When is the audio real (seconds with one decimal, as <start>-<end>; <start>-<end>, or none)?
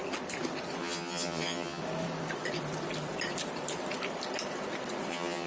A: 0.0-0.8; 1.8-5.1